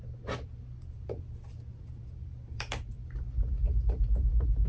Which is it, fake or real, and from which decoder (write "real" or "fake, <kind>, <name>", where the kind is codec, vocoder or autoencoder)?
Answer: fake, vocoder, BigVGAN v2